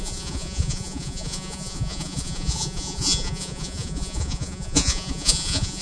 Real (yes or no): no